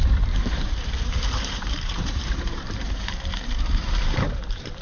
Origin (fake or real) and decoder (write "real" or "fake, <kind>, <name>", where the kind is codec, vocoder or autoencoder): fake, vocoder, BigVGAN v2